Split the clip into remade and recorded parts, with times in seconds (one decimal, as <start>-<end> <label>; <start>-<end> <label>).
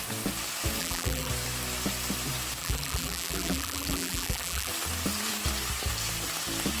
0.0-0.8 recorded; 0.8-1.3 remade; 1.3-2.6 recorded; 2.6-4.7 remade; 4.7-6.8 recorded